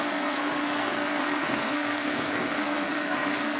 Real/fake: fake